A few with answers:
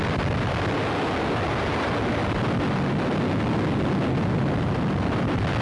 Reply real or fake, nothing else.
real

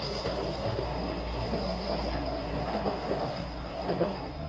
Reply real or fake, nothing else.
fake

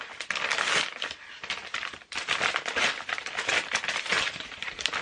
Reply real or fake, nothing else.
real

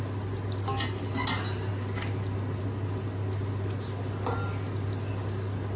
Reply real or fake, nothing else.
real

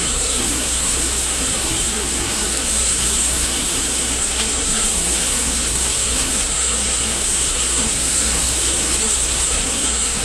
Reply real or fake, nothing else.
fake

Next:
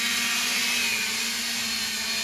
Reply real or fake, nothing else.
real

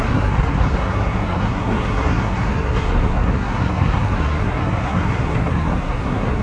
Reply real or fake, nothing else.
fake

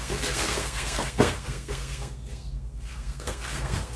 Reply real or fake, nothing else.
fake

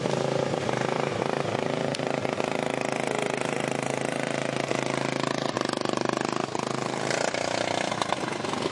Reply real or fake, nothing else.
real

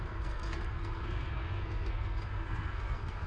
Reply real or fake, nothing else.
fake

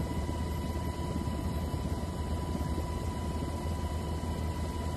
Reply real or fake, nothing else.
real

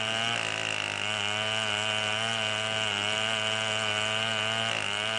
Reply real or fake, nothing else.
real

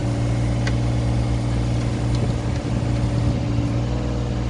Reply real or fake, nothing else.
real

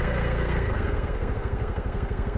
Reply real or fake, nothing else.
fake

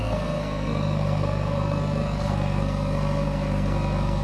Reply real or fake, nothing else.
fake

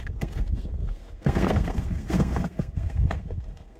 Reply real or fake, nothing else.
fake